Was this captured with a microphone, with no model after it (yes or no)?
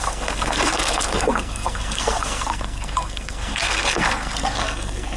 no